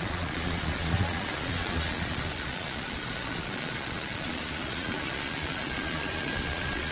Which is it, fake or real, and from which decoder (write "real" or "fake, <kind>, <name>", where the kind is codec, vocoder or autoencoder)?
fake, vocoder, Vocos